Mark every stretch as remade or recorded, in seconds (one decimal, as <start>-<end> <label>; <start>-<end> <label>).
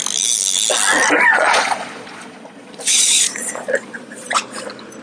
0.0-1.3 recorded; 1.3-4.3 remade; 4.3-5.0 recorded